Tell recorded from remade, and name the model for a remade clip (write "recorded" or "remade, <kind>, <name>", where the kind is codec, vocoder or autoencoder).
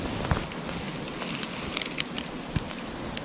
recorded